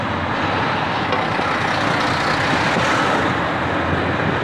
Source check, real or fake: real